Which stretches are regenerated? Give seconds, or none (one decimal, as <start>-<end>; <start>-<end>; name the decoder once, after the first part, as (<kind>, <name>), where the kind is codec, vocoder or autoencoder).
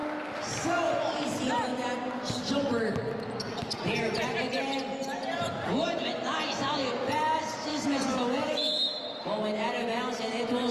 7.7-9.0 (autoencoder, DAC-VAE)